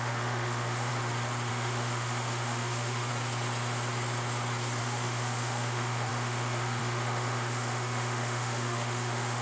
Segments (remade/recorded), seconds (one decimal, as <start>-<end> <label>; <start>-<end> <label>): 0.0-0.9 remade; 0.9-1.5 recorded; 1.5-3.1 remade; 3.1-4.8 recorded; 4.8-9.4 remade